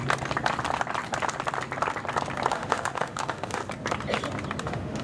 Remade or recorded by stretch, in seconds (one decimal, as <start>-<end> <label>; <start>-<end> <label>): 0.0-2.5 recorded; 2.5-3.6 remade; 3.6-4.6 recorded; 4.6-5.0 remade